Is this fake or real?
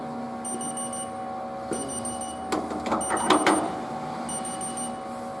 real